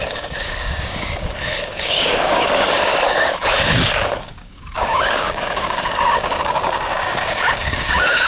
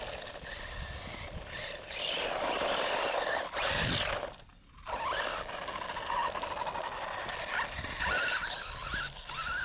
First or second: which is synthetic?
first